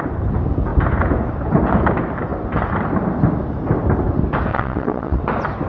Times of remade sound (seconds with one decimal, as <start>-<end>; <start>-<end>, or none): 4.5-5.2